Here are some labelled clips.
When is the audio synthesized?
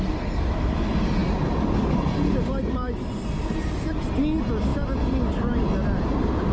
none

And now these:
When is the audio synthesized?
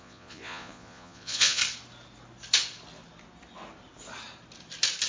0.0-1.6 (vocoder, Vocos)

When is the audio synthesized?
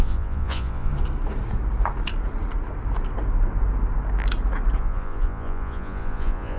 0.0-0.9 (vocoder, Vocos); 4.8-6.6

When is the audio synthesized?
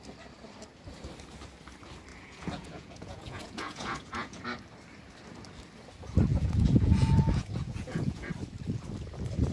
2.1-4.4 (vocoder, Vocos); 6.3-8.3